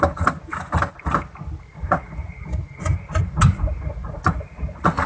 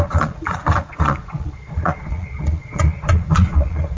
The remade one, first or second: second